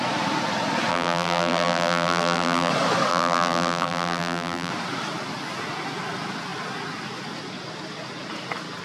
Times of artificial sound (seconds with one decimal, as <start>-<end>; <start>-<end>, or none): 0.9-2.7; 3.1-4.7